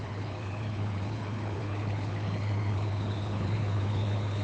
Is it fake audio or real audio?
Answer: fake